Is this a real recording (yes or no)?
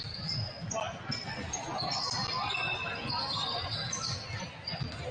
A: yes